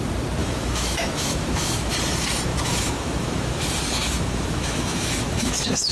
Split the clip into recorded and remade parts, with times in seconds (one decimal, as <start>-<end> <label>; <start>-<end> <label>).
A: 0.0-0.4 recorded; 0.4-1.9 remade; 1.9-2.5 recorded; 2.5-5.9 remade